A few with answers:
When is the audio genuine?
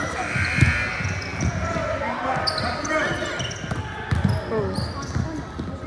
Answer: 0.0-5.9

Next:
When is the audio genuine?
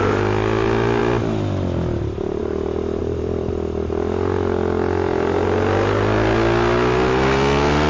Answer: 0.0-3.0; 3.5-7.9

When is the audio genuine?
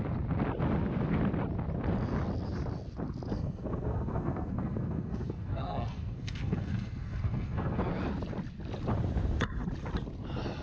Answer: 0.0-3.3; 7.8-10.6